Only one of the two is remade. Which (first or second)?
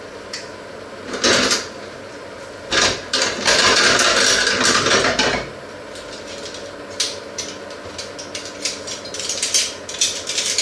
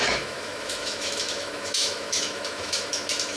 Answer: second